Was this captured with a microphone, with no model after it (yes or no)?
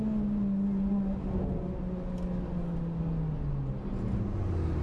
yes